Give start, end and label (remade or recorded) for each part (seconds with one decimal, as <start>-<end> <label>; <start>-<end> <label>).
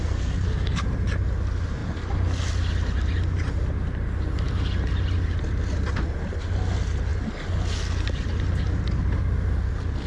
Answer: 0.0-0.8 remade; 0.8-10.1 recorded